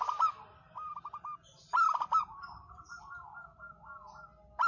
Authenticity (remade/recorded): recorded